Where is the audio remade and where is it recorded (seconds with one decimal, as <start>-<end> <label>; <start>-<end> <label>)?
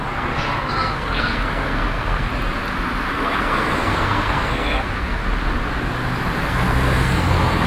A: 0.0-2.3 remade; 2.3-3.1 recorded; 3.1-5.2 remade; 5.2-6.4 recorded; 6.4-7.7 remade